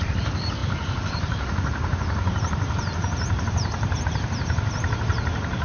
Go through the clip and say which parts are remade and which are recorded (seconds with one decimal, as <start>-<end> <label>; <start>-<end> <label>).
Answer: 0.0-5.6 remade